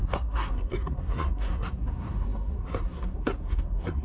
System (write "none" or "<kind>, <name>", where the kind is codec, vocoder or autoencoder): codec, SNAC